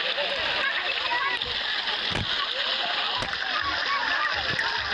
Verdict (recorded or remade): recorded